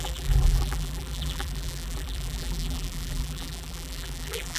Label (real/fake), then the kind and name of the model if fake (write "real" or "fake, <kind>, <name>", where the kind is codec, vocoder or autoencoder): fake, vocoder, BigVGAN v2